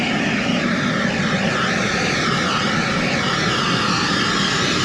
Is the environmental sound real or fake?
real